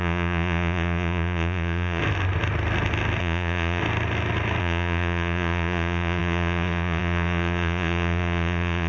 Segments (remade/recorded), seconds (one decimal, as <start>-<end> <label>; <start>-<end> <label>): 0.0-2.0 remade; 2.0-3.2 recorded; 3.2-3.8 remade; 3.8-4.6 recorded; 4.6-8.9 remade